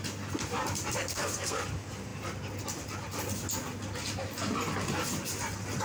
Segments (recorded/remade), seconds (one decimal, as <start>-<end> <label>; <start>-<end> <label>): 0.0-1.0 recorded; 1.0-1.6 remade; 1.6-5.8 recorded